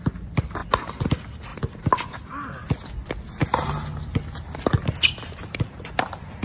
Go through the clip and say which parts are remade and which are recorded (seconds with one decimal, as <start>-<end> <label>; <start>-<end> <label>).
0.0-6.4 recorded